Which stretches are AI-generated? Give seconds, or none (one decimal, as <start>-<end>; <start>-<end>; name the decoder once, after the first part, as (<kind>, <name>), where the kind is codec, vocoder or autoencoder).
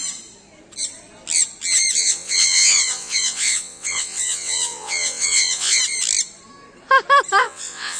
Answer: 2.0-5.8 (vocoder, WaveNeXt); 7.4-8.0